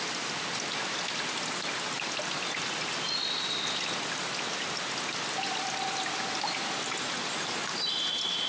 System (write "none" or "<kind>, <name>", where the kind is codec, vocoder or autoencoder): none